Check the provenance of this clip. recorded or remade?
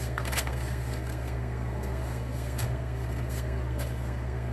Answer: remade